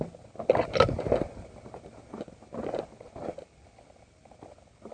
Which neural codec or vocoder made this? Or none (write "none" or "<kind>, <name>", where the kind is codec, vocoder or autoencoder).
none